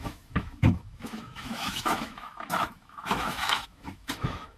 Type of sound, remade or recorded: remade